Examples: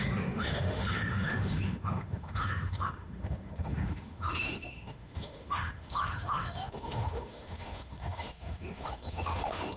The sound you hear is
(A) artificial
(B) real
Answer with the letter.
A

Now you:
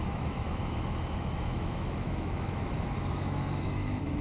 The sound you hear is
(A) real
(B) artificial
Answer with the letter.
B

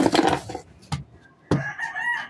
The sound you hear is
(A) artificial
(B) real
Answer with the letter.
B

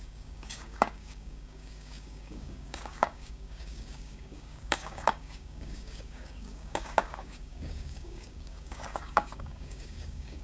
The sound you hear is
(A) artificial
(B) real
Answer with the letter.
A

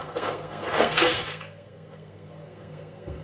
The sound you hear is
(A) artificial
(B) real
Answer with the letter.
A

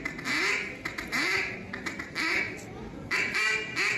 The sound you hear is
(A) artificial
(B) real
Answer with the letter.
B